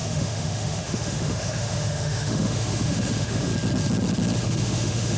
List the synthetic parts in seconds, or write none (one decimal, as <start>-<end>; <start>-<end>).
0.0-3.5; 4.4-5.2